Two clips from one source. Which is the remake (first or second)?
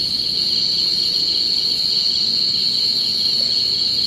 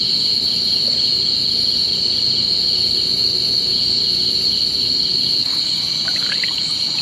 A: second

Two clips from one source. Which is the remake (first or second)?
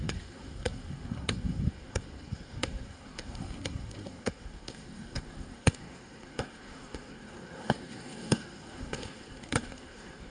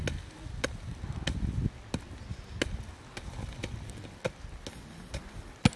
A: first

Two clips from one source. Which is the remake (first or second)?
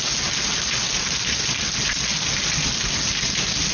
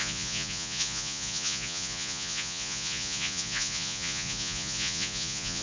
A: second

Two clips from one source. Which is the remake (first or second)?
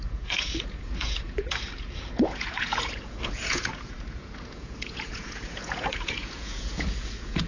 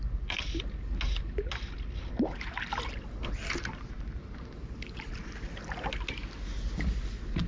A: first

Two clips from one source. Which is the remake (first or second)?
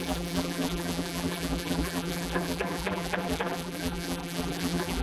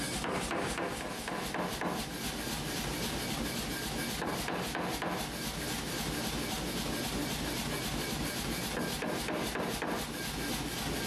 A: first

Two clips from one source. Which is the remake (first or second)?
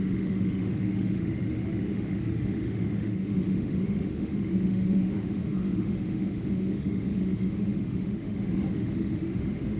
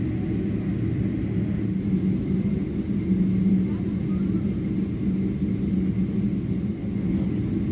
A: first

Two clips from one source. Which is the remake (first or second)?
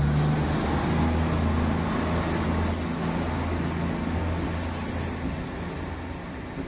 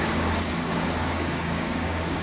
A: second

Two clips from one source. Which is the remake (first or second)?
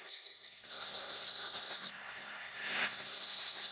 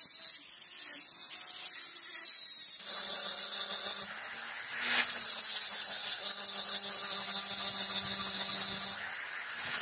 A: first